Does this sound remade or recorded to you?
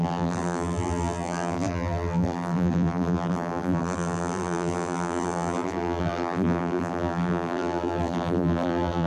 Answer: remade